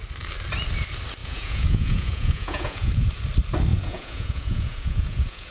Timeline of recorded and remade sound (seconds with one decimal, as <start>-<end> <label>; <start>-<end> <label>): 0.0-1.2 recorded; 1.2-2.9 remade; 2.9-3.7 recorded; 3.7-5.5 remade